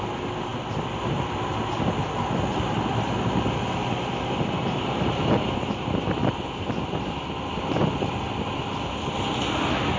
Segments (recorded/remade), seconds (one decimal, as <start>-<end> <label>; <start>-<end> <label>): 0.0-10.0 recorded